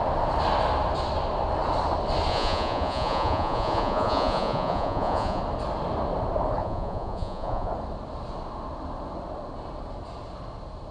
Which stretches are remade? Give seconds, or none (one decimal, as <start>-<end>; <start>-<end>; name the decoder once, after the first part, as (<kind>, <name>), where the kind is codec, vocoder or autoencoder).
2.3-5.4 (vocoder, Vocos); 6.6-7.7

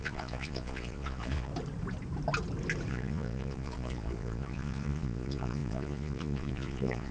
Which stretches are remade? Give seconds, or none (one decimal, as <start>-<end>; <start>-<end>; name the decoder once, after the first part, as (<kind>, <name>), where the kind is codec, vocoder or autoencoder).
0.0-1.5 (vocoder, Vocos); 2.9-7.1